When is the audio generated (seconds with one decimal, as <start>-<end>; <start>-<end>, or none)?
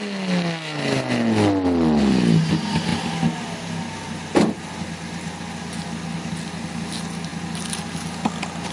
none